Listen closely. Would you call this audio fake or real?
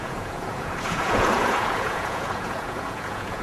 fake